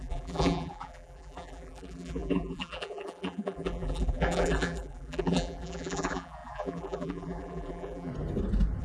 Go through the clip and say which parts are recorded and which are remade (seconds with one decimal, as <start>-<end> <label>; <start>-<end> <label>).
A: 0.0-8.1 remade; 8.1-8.8 recorded